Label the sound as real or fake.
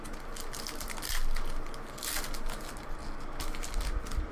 real